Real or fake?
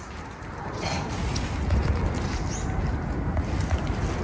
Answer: real